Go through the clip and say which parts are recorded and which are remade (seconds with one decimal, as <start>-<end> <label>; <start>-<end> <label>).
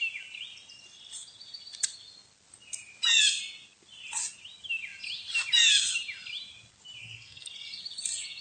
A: 0.0-7.0 recorded; 7.0-7.5 remade; 7.5-8.4 recorded